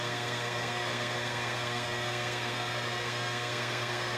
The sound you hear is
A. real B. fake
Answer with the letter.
B